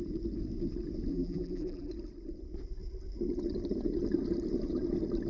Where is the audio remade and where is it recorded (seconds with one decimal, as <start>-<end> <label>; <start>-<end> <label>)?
0.0-1.1 recorded; 1.1-1.9 remade; 1.9-5.3 recorded